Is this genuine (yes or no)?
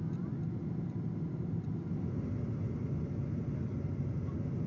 yes